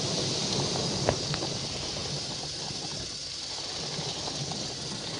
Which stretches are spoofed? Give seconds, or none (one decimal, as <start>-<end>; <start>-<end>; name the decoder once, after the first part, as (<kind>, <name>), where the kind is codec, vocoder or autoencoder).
none